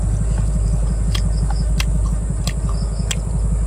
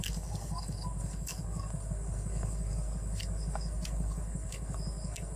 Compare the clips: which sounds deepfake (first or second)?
second